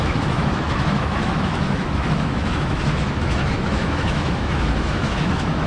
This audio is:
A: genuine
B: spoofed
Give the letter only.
B